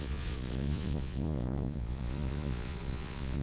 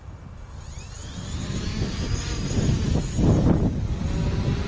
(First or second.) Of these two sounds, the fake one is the first